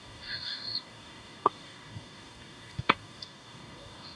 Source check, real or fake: fake